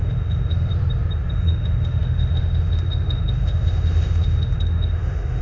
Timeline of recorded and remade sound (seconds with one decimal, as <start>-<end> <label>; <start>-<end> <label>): 0.0-0.7 remade; 0.7-1.3 recorded; 1.3-5.4 remade